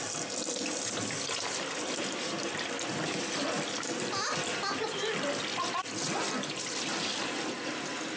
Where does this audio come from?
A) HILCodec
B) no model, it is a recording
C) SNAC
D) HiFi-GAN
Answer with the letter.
B